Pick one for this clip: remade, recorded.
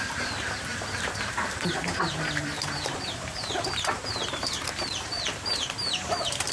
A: remade